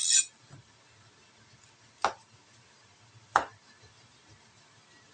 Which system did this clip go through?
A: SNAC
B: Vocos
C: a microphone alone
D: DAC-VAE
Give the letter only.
C